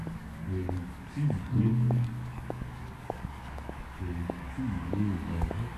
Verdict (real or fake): fake